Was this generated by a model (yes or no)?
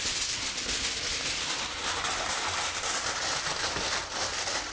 no